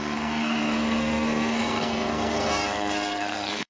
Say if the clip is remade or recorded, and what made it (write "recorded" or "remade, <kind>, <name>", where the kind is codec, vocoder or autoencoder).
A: remade, codec, SNAC